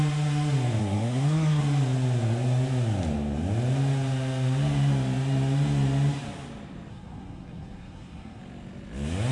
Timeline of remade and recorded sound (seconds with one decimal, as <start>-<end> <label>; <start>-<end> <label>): 0.0-0.8 recorded; 0.8-1.6 remade; 1.6-6.9 recorded; 6.9-8.4 remade; 8.4-9.3 recorded